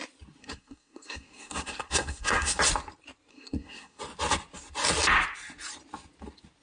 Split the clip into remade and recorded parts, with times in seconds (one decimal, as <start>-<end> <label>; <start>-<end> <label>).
0.0-0.4 recorded; 0.4-2.6 remade; 2.6-3.3 recorded; 3.3-4.0 remade; 4.0-6.6 recorded

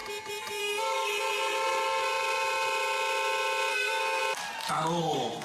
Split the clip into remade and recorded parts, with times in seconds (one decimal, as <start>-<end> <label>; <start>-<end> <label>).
0.0-0.6 recorded; 0.6-1.1 remade; 1.1-3.7 recorded; 3.7-4.2 remade; 4.2-5.0 recorded; 5.0-5.4 remade

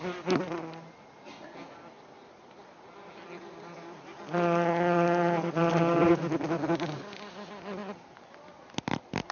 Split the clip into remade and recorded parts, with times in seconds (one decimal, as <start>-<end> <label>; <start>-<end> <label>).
0.0-9.3 recorded

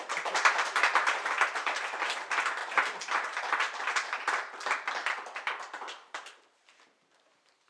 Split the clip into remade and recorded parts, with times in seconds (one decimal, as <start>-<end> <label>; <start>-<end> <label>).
0.0-2.6 remade; 2.6-4.9 recorded; 4.9-7.7 remade

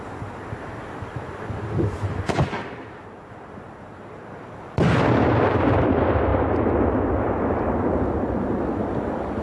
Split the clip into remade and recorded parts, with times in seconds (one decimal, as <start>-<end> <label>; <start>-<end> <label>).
0.0-9.4 recorded